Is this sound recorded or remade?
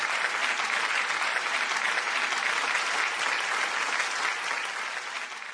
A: recorded